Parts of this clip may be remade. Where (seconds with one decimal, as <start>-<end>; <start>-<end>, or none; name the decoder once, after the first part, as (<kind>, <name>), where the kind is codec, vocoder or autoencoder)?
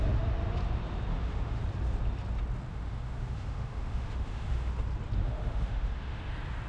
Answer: 1.1-1.6 (autoencoder, DAC-VAE); 2.7-4.7; 5.2-6.3